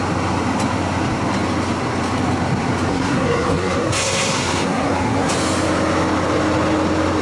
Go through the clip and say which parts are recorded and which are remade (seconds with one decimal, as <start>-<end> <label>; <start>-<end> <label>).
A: 0.0-2.9 recorded; 2.9-5.3 remade; 5.3-7.2 recorded